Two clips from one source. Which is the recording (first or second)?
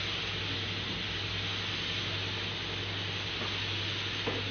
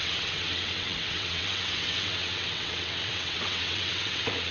first